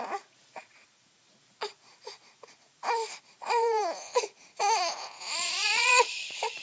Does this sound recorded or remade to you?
remade